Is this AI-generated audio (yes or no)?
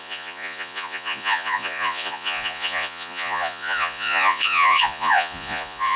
yes